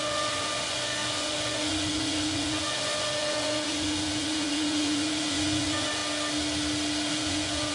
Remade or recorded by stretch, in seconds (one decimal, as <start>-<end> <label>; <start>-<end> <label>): 0.0-6.0 remade; 6.0-7.1 recorded; 7.1-7.7 remade